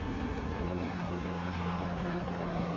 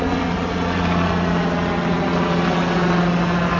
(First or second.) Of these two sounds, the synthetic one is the first